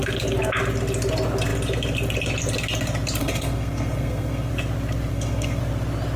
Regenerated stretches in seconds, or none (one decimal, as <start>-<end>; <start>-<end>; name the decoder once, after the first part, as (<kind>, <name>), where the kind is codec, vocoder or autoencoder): 3.2-4.5 (codec, SNAC); 5.1-5.6